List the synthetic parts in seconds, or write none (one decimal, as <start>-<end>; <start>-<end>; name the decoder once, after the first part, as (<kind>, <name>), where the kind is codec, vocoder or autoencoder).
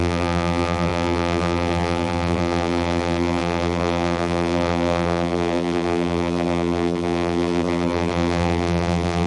0.0-9.3 (vocoder, BigVGAN v2)